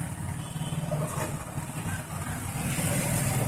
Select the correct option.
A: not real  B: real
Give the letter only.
B